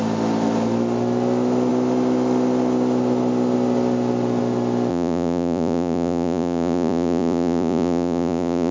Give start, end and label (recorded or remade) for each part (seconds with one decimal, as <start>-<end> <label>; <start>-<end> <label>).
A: 0.0-4.9 recorded; 4.9-8.7 remade